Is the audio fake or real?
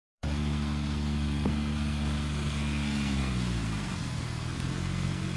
fake